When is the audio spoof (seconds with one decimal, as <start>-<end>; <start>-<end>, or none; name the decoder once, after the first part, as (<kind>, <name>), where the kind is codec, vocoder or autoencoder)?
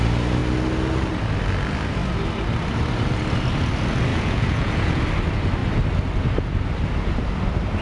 4.1-5.0 (vocoder, Vocos)